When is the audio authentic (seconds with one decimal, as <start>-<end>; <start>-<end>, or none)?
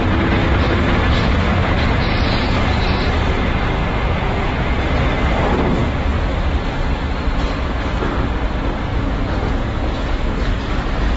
0.0-1.6; 2.8-3.8; 4.9-8.9; 10.2-11.2